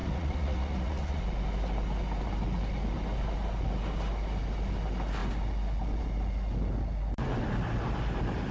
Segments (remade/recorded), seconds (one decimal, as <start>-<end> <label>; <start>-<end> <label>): 0.0-1.2 remade; 1.2-8.5 recorded